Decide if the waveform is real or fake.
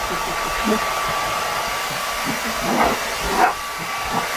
real